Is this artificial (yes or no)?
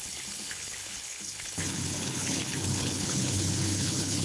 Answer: yes